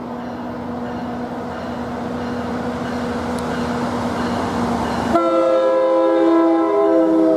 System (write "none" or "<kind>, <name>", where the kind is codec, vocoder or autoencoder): none